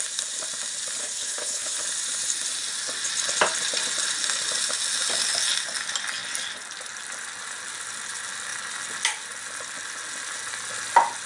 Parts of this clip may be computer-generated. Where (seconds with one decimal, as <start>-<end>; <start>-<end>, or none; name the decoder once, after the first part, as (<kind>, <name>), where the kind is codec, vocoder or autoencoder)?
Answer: 1.0-1.8 (codec, HILCodec)